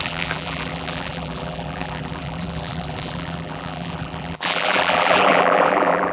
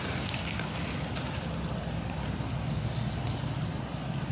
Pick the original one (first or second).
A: second